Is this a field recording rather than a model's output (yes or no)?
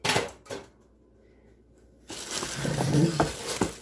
yes